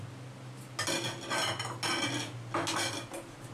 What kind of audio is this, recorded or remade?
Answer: recorded